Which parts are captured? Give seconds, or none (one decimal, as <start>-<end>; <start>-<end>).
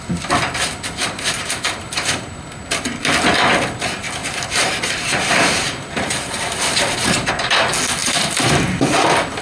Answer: 0.0-1.0; 2.4-4.2; 7.3-8.0; 8.5-9.4